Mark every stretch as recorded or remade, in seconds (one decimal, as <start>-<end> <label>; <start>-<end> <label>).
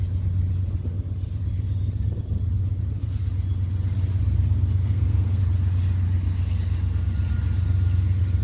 0.0-4.8 recorded; 4.8-5.4 remade; 5.4-8.4 recorded